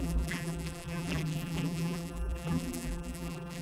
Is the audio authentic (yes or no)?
no